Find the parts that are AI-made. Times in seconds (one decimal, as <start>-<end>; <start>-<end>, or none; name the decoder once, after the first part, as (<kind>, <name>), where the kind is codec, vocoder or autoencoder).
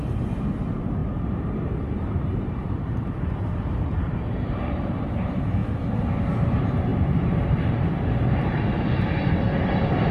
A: 0.0-5.6 (vocoder, BigVGAN v2); 6.5-10.1